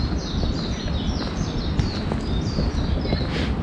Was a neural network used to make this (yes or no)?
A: no